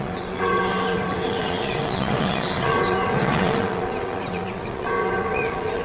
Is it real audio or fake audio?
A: fake